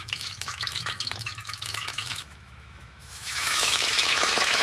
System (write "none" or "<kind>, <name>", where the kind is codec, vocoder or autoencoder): autoencoder, DAC-VAE